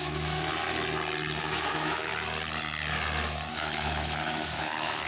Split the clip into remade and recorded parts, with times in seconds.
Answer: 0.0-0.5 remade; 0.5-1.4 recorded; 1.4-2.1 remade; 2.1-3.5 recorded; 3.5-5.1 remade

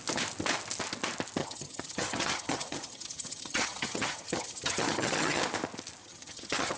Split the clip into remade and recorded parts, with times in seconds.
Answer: 0.0-1.4 recorded; 1.4-5.4 remade; 5.4-6.0 recorded; 6.0-6.8 remade